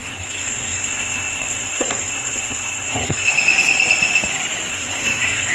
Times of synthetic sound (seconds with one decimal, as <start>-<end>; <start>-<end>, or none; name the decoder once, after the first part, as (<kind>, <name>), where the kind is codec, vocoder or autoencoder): 0.0-3.3 (codec, SNAC); 4.7-5.5